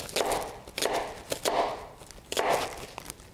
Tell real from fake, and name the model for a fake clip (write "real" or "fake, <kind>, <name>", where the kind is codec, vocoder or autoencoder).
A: real